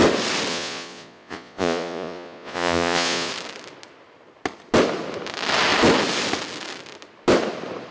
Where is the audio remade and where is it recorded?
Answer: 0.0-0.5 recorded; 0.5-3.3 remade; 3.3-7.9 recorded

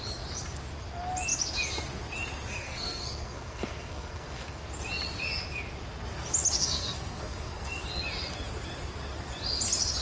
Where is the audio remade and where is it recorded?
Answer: 0.0-2.5 recorded; 2.5-4.6 remade; 4.6-6.6 recorded; 6.6-7.8 remade; 7.8-10.0 recorded

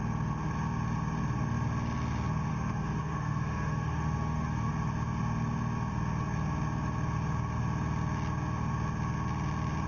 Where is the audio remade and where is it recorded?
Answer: 0.0-2.5 recorded; 2.5-4.7 remade; 4.7-9.9 recorded

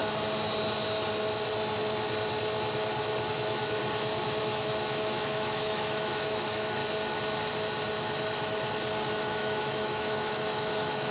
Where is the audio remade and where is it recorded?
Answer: 0.0-3.3 recorded; 3.3-3.8 remade; 3.8-4.4 recorded; 4.4-6.8 remade; 6.8-9.1 recorded; 9.1-11.1 remade

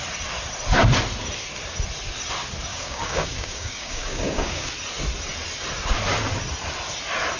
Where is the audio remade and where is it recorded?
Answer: 0.0-2.7 recorded; 2.7-4.7 remade; 4.7-7.4 recorded

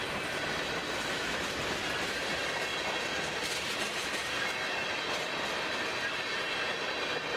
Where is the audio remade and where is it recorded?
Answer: 0.0-7.4 recorded